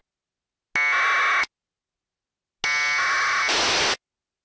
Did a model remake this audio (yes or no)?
no